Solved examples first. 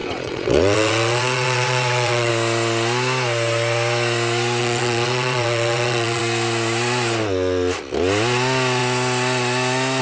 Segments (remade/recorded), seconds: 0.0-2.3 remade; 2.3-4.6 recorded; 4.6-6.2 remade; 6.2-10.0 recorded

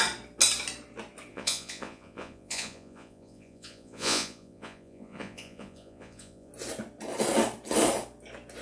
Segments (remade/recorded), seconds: 0.0-1.3 recorded; 1.3-6.5 remade; 6.5-8.6 recorded

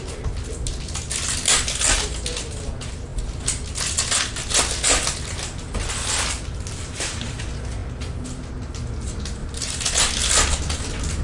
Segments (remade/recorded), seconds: 0.0-11.2 recorded

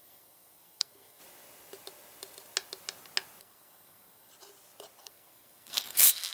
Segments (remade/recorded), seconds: 0.0-1.2 remade; 1.2-3.4 recorded; 3.4-4.3 remade; 4.3-5.0 recorded; 5.0-6.3 remade